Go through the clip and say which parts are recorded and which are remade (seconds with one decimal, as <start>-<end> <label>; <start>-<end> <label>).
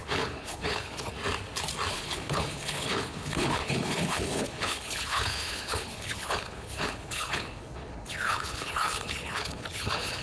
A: 0.0-1.1 remade; 1.1-1.9 recorded; 1.9-10.2 remade